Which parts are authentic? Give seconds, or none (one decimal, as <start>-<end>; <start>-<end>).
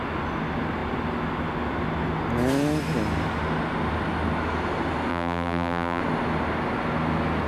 0.0-5.1; 6.0-7.5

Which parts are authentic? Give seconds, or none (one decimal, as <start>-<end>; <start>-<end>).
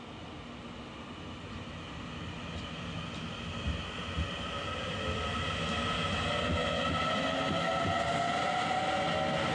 0.0-4.8; 5.4-9.5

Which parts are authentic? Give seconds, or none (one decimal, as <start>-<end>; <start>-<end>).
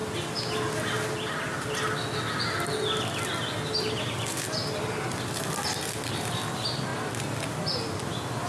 0.0-4.0; 6.9-7.6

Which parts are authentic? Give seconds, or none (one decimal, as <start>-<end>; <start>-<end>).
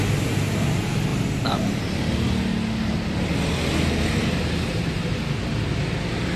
0.0-1.1; 1.8-6.4